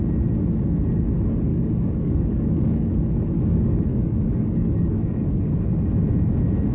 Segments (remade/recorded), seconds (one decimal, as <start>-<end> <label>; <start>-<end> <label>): 0.0-1.5 recorded; 1.5-5.5 remade; 5.5-6.7 recorded